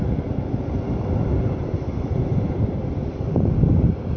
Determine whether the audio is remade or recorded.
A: recorded